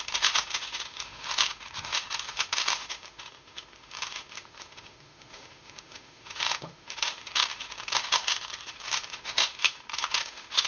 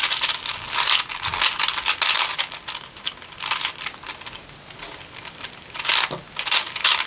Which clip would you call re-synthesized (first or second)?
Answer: first